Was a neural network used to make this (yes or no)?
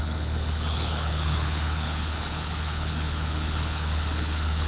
yes